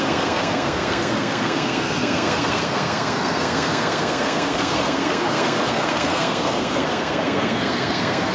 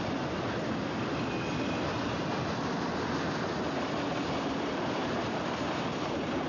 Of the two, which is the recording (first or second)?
second